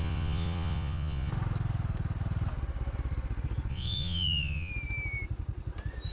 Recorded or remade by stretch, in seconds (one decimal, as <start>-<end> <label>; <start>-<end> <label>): 0.0-1.3 remade; 1.3-3.7 recorded; 3.7-4.7 remade; 4.7-6.1 recorded